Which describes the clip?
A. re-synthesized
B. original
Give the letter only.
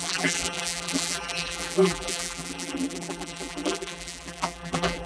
A